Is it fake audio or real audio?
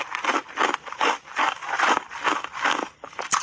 real